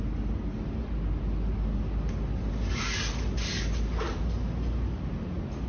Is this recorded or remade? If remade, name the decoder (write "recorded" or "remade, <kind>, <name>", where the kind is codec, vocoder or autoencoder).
recorded